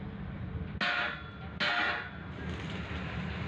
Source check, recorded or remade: recorded